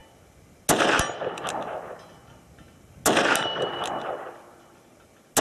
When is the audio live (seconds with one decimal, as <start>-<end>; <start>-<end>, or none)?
0.0-5.4